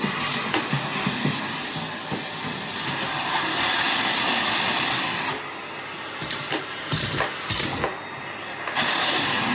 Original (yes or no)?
yes